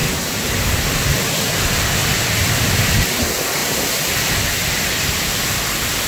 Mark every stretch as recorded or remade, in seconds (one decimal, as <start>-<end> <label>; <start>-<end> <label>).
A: 0.0-0.6 recorded; 0.6-6.1 remade